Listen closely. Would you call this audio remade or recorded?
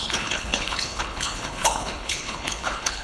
remade